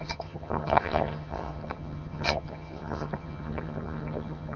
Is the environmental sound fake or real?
fake